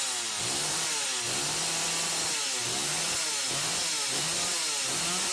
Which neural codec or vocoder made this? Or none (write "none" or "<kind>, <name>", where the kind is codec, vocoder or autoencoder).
none